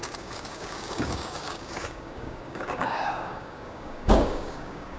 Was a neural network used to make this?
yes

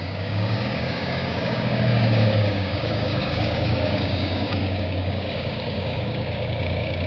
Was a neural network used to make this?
yes